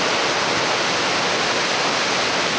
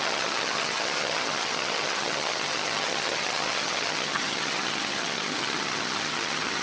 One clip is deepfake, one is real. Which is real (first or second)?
first